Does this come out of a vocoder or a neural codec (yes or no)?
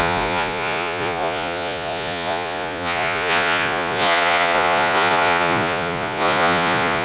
yes